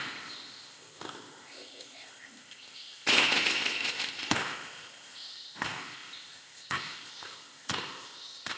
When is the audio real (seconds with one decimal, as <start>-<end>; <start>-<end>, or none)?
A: none